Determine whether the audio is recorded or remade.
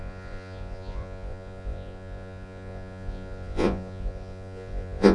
remade